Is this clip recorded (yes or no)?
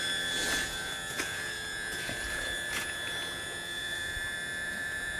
no